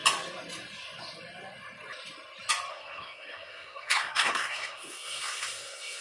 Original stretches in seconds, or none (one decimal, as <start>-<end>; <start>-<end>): 0.0-2.7